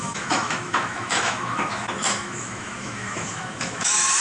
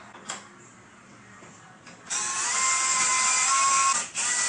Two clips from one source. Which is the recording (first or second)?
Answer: second